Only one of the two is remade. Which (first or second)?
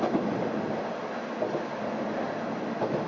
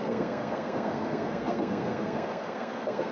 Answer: second